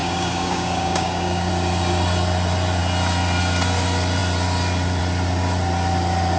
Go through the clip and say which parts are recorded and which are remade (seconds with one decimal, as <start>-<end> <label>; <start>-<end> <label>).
0.0-1.5 remade; 1.5-6.4 recorded